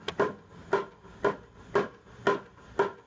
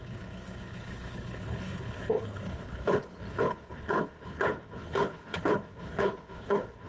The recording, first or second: first